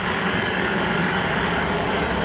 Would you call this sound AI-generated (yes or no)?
yes